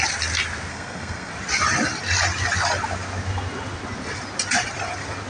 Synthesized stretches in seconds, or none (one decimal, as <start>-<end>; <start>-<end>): 0.7-1.3